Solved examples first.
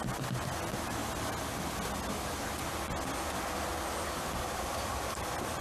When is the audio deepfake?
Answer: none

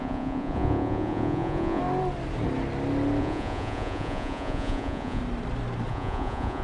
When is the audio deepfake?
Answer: 0.0-1.8 (vocoder, Vocos); 3.2-5.2; 5.9-6.6

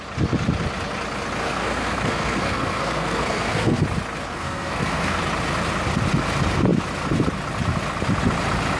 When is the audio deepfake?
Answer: 1.4-3.8 (codec, SNAC); 4.3-5.2

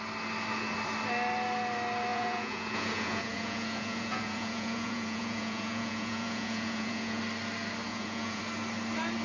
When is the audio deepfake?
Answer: 2.1-7.2 (vocoder, Vocos); 7.9-8.4

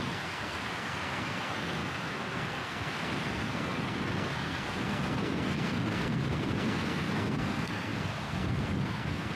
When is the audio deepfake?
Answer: 0.0-9.4 (codec, SNAC)

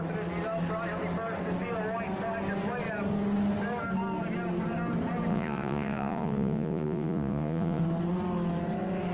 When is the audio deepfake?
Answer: 5.3-7.8 (vocoder, Vocos)

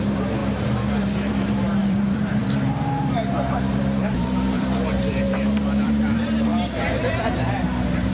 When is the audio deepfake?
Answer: 0.0-8.1 (vocoder, BigVGAN v2)